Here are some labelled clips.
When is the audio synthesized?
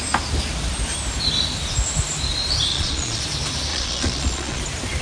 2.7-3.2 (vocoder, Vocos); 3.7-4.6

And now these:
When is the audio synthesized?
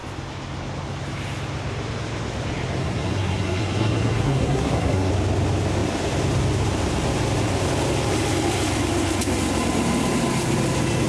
2.8-5.1 (codec, SNAC)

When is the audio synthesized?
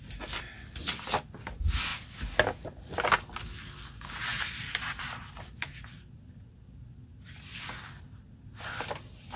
none